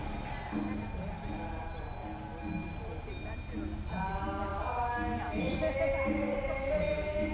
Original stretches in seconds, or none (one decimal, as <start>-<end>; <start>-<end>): 0.0-7.3